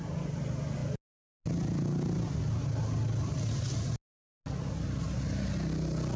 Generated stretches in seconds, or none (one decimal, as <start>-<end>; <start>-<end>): none